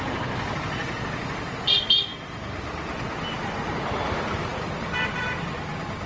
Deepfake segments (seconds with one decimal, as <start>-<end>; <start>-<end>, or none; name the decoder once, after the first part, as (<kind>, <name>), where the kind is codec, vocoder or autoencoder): none